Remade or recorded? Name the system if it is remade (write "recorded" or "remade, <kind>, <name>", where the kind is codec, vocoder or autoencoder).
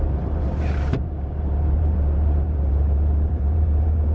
remade, vocoder, BigVGAN v2